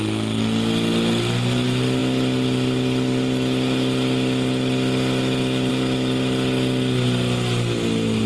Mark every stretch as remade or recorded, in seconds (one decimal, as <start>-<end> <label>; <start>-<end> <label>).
0.0-8.3 recorded